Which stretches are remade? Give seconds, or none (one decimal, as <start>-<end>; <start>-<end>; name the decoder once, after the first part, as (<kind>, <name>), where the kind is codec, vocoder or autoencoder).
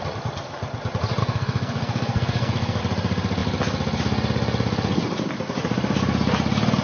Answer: 1.2-2.8 (codec, SNAC)